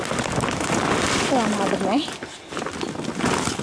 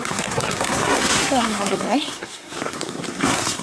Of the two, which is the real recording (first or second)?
first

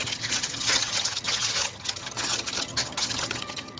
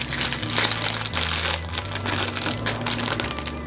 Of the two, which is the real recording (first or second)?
second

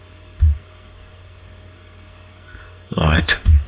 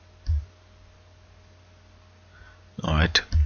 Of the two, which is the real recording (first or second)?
second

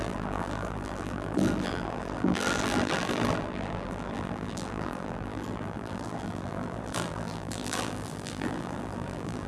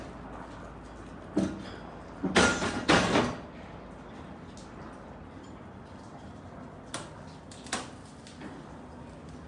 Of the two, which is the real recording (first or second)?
second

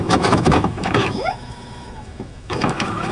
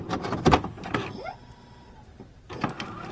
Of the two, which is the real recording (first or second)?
second